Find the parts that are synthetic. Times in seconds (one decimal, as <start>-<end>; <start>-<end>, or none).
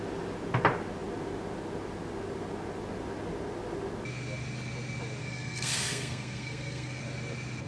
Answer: 5.2-7.0